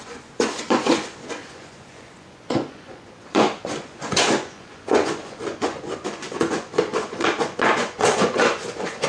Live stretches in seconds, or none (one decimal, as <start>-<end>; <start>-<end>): none